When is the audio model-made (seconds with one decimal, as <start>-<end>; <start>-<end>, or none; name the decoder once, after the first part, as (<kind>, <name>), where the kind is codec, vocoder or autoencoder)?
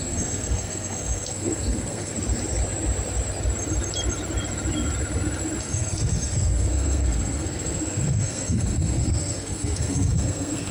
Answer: 0.0-2.1 (codec, SNAC); 5.6-10.7